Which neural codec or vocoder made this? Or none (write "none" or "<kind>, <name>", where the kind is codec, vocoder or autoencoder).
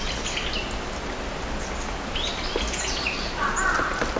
none